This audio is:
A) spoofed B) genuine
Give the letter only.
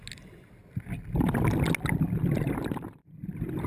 B